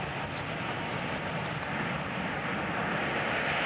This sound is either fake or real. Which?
real